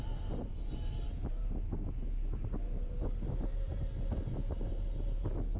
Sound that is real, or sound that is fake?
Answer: real